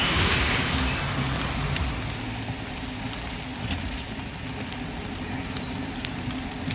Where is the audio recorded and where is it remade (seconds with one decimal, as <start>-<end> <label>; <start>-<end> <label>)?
0.0-0.9 remade; 0.9-6.7 recorded